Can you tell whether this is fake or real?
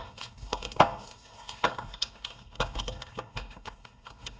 fake